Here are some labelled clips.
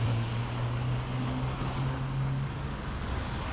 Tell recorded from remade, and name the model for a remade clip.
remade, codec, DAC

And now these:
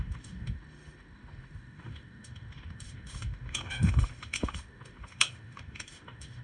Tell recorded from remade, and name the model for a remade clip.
remade, autoencoder, DAC-VAE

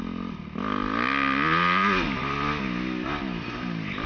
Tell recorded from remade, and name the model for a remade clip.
recorded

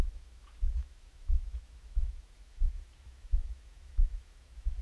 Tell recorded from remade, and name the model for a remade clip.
remade, autoencoder, DAC-VAE